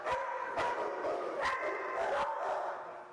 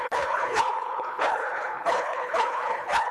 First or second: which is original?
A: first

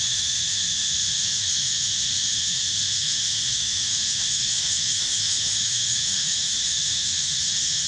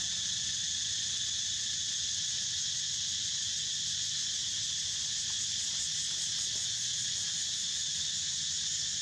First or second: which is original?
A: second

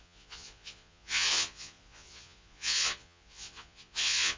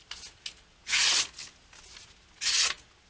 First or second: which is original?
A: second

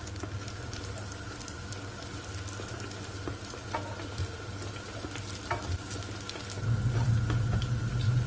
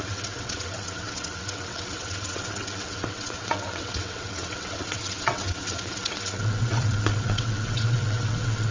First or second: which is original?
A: first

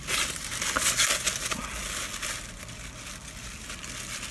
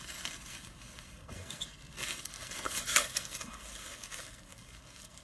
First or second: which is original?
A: first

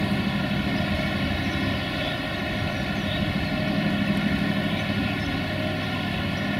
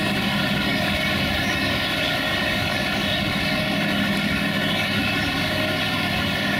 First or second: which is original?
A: first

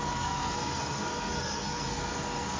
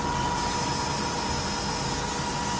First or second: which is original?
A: second